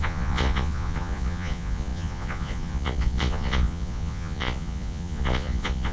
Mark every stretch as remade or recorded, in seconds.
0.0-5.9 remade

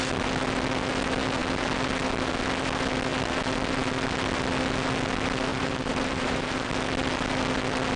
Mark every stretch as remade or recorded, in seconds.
0.0-5.5 recorded; 5.5-6.7 remade; 6.7-8.0 recorded

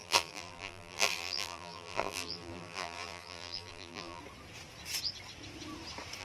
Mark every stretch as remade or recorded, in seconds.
0.0-4.2 remade; 4.2-6.2 recorded

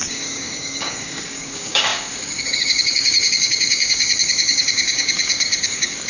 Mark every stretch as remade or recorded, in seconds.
0.0-6.1 remade